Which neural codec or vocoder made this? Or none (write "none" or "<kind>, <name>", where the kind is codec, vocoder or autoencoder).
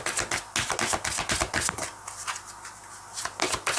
none